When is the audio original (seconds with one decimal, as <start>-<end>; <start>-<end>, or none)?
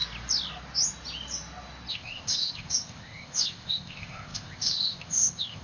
0.0-1.9